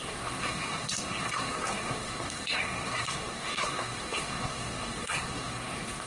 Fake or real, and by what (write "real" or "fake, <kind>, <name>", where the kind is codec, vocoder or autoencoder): fake, codec, SNAC